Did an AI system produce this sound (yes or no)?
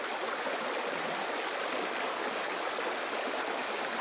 no